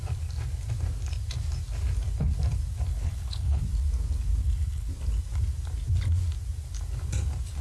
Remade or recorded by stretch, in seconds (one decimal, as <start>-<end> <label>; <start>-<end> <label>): 0.0-2.9 recorded; 2.9-3.6 remade; 3.6-4.4 recorded; 4.4-4.9 remade; 4.9-7.6 recorded